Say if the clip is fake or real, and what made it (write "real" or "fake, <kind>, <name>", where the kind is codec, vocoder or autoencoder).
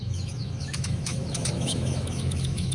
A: fake, autoencoder, DAC-VAE